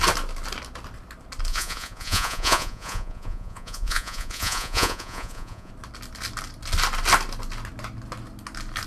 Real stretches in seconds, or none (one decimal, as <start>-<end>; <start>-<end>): 0.0-1.5; 5.7-8.9